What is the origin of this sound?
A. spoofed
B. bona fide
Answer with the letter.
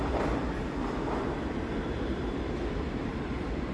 A